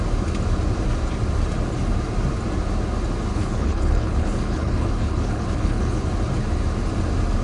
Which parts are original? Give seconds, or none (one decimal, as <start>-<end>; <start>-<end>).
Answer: 0.0-3.3; 6.0-7.4